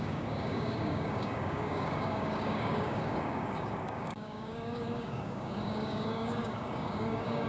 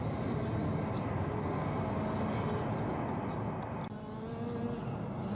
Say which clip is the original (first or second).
second